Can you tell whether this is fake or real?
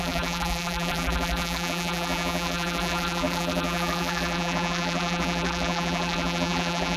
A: fake